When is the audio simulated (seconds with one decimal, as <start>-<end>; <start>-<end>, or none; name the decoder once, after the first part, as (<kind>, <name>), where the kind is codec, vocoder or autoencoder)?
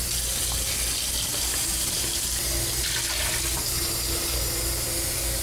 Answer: 1.3-2.2 (vocoder, BigVGAN v2)